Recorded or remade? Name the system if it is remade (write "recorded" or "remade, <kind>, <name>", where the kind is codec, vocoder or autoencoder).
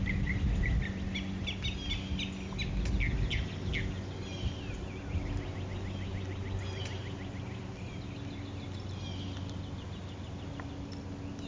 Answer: recorded